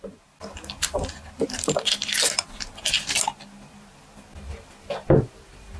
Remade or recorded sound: recorded